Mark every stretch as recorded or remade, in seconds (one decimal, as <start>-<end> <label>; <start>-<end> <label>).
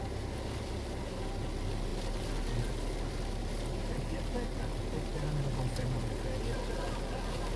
0.0-7.6 recorded